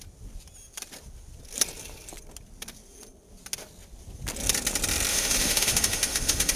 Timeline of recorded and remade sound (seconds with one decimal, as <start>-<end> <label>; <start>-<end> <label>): 0.0-5.1 recorded; 5.1-6.6 remade